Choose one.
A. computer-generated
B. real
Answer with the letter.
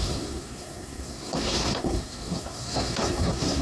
A